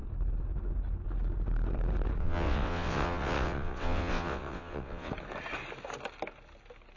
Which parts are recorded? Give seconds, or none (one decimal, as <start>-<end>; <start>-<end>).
0.0-2.2; 5.1-7.0